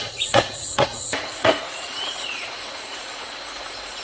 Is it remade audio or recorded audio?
remade